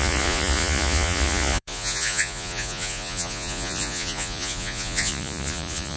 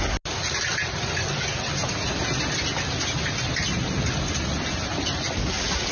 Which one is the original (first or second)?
second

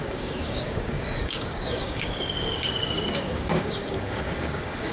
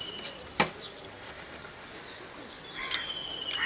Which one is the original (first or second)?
second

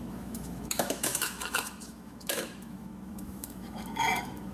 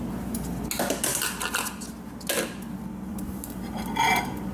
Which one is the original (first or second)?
second